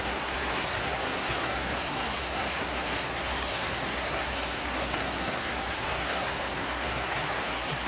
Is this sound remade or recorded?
remade